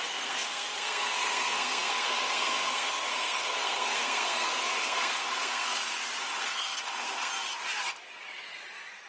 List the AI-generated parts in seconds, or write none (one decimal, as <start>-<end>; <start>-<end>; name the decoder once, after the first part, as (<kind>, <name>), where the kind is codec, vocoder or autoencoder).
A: 0.0-5.9 (codec, SNAC); 6.4-7.3